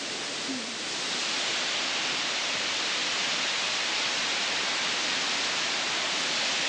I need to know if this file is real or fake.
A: real